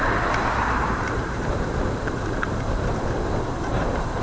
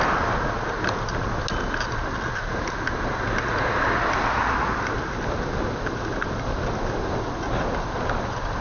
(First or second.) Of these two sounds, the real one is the second